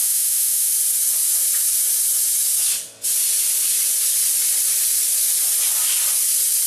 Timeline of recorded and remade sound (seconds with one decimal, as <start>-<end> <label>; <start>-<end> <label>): 0.0-0.7 remade; 0.7-6.7 recorded